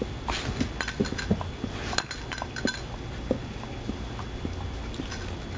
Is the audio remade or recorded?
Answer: recorded